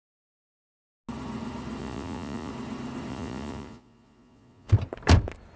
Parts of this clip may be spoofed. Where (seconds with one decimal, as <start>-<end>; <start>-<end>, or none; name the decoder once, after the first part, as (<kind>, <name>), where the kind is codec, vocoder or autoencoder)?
1.8-2.5 (vocoder, Vocos); 3.1-4.7